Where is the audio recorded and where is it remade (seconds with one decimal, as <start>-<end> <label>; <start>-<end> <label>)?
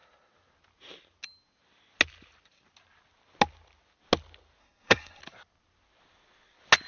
0.0-4.6 recorded; 4.6-5.2 remade; 5.2-6.9 recorded